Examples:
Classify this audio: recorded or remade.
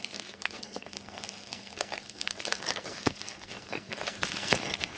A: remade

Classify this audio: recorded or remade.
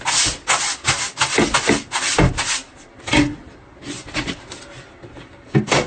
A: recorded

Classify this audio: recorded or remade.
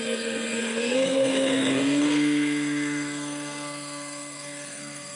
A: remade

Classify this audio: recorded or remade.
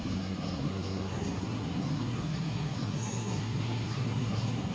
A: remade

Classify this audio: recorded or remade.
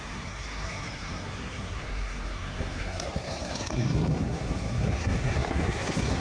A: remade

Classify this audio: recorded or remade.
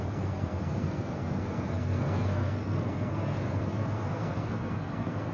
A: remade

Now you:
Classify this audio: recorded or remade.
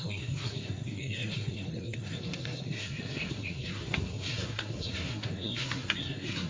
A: remade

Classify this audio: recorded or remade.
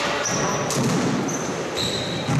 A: recorded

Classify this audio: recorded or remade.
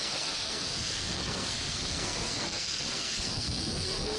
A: remade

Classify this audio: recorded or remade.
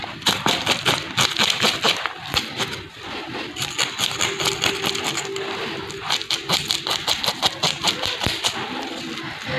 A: recorded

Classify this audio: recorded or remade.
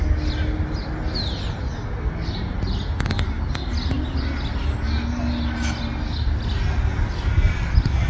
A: recorded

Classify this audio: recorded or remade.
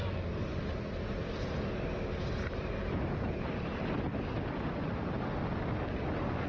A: recorded